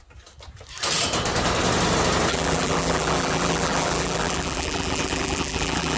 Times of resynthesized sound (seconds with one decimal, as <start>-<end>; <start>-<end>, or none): 2.3-6.0